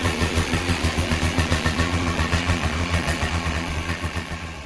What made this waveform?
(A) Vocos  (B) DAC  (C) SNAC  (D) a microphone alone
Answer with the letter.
A